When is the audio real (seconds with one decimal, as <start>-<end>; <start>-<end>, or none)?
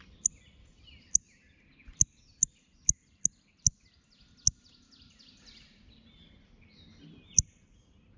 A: 0.0-8.2